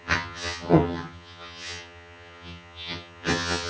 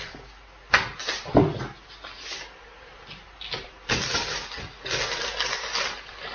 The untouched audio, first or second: second